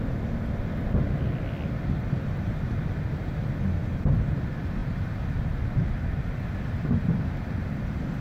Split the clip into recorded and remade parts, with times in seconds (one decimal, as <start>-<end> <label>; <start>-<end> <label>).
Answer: 0.0-8.2 recorded